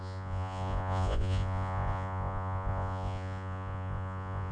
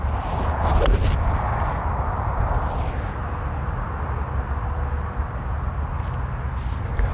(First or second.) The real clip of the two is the second